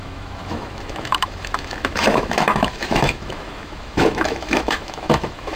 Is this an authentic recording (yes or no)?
no